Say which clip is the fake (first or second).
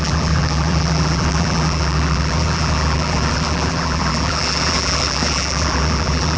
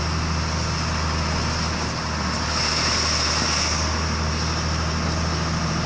first